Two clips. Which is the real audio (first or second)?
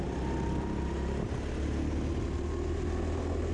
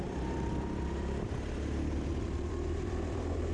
first